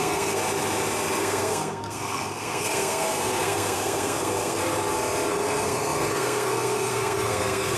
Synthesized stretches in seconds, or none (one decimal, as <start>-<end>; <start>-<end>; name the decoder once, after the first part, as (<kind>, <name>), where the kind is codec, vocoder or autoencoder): 0.0-0.4 (codec, SNAC); 1.2-4.6; 5.3-7.8